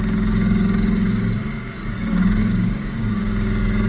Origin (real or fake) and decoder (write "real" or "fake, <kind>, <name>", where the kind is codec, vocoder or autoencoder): fake, codec, DAC